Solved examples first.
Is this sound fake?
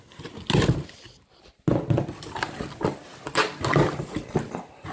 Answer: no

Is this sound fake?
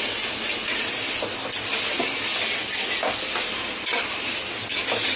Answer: no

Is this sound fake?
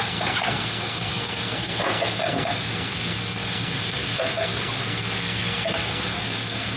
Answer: yes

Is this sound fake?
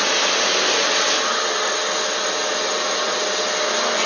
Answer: no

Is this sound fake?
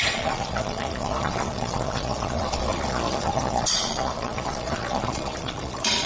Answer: yes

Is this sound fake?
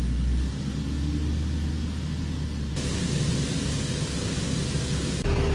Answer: no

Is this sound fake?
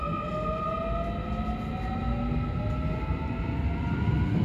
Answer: no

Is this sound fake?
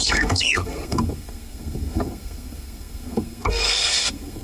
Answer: yes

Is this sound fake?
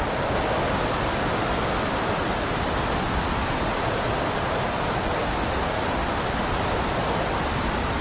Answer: no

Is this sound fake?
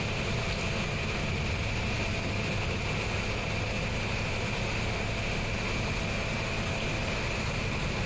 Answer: no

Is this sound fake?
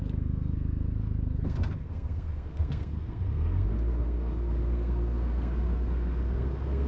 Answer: yes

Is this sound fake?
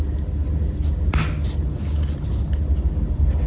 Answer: no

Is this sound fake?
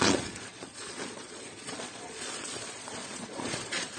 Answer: yes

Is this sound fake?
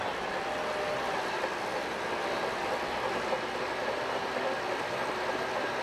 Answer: no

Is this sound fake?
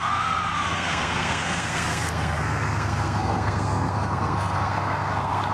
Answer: yes